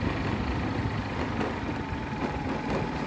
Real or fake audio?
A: real